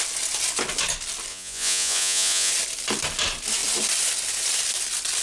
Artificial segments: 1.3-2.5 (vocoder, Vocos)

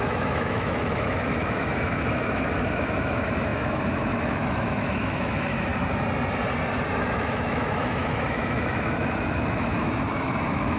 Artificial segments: 0.0-5.7 (autoencoder, DAC-VAE); 7.0-10.8

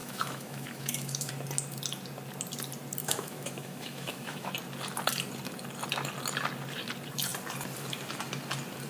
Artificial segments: 0.0-1.3 (autoencoder, DAC-VAE); 3.0-4.5

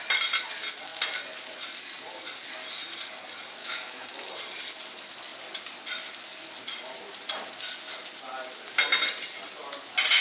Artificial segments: 3.6-4.3 (autoencoder, DAC-VAE)

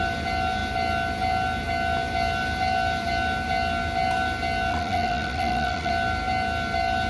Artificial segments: 4.7-5.9 (vocoder, Vocos)

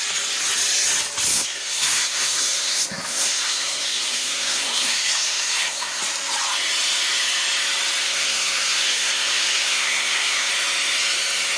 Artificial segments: 1.3-6.0 (codec, SNAC); 8.0-10.5

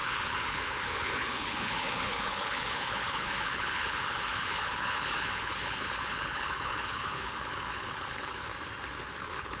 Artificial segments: 0.0-8.5 (codec, HILCodec); 9.2-9.6

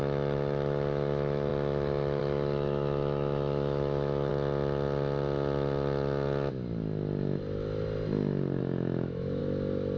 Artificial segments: 0.0-4.3 (autoencoder, DAC-VAE); 8.6-9.4